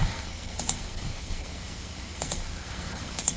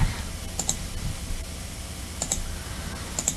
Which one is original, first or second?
second